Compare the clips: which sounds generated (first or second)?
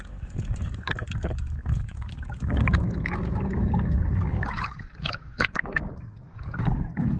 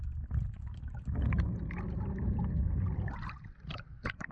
first